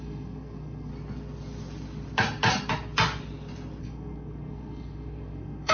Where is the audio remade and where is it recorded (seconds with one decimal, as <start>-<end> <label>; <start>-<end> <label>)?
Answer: 0.0-0.9 remade; 0.9-3.8 recorded; 3.8-5.7 remade